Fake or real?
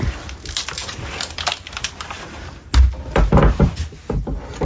real